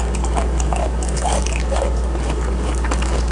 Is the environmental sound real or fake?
fake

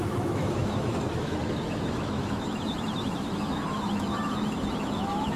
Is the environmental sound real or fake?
fake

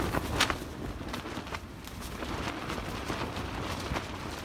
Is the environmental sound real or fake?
real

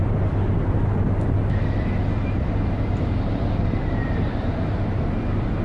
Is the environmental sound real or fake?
fake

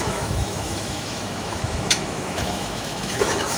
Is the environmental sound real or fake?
fake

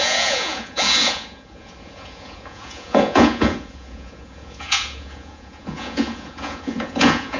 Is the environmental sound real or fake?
fake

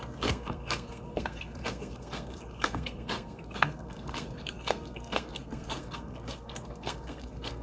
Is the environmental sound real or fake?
fake